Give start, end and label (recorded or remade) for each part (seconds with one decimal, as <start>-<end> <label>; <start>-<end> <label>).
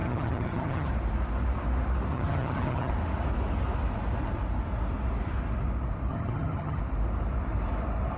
0.0-0.9 remade; 0.9-2.1 recorded; 2.1-2.9 remade; 2.9-6.1 recorded; 6.1-6.8 remade; 6.8-8.2 recorded